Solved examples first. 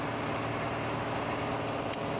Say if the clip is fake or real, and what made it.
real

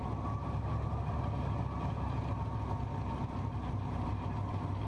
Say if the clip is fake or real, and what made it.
real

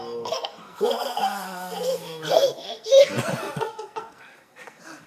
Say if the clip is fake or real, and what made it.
fake, codec, SNAC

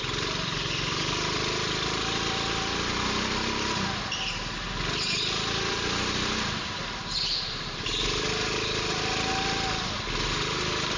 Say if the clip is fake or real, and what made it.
real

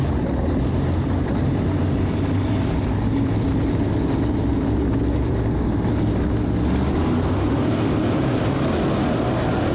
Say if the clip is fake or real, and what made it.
real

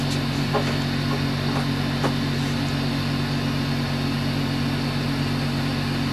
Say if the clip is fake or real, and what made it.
real